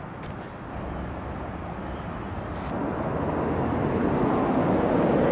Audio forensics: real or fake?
real